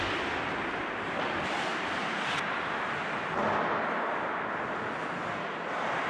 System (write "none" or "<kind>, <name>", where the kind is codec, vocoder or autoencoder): none